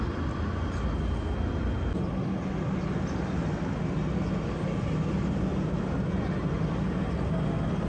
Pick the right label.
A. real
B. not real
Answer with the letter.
A